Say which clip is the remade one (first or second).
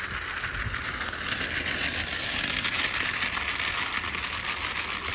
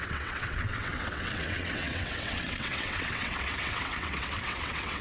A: second